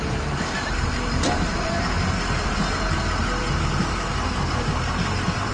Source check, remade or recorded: recorded